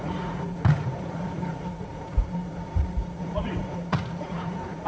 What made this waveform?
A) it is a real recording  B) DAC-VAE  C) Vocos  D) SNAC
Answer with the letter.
C